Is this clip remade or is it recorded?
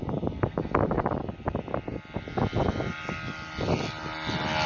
recorded